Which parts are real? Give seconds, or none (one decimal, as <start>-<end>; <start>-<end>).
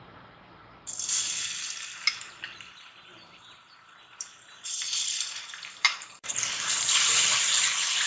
0.6-2.2